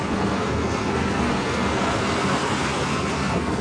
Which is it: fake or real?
fake